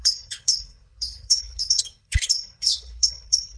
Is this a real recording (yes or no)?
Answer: no